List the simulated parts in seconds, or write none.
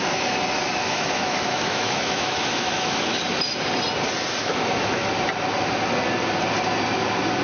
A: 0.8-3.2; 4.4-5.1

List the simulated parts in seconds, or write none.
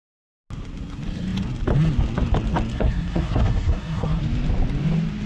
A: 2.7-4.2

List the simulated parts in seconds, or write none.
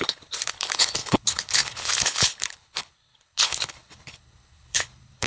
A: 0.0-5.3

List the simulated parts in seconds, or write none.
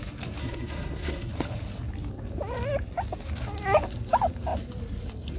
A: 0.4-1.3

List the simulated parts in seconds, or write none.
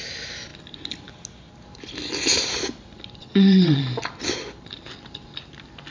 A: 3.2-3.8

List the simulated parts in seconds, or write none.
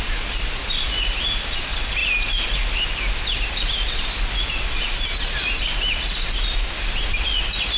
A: none